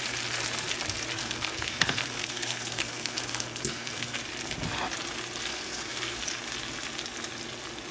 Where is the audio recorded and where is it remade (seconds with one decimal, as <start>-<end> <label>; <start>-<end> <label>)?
0.0-1.2 recorded; 1.2-4.2 remade; 4.2-5.5 recorded; 5.5-6.2 remade; 6.2-7.9 recorded